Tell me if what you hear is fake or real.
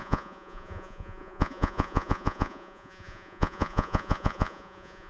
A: fake